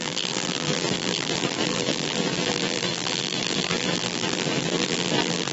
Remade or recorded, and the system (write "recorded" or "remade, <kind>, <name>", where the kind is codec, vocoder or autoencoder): remade, vocoder, BigVGAN v2